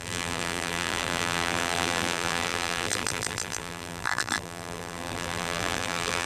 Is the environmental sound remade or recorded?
remade